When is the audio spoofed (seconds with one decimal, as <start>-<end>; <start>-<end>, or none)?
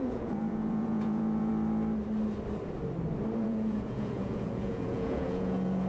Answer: 0.0-1.5; 3.4-5.9